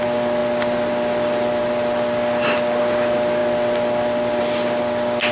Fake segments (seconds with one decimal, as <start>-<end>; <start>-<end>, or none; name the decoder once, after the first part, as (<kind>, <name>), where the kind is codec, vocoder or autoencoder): none